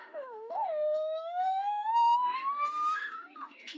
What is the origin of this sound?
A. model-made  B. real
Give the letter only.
A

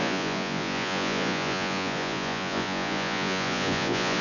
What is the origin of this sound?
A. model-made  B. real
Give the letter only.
A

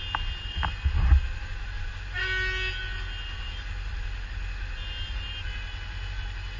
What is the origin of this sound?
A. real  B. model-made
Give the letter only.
A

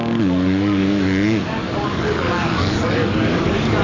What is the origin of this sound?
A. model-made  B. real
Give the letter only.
A